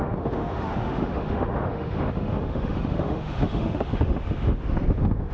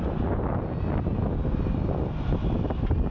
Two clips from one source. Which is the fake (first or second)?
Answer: first